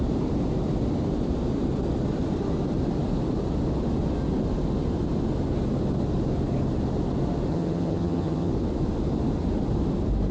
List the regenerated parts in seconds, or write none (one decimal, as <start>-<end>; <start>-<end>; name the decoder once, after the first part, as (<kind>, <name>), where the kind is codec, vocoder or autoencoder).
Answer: 7.5-8.5 (vocoder, HiFi-GAN)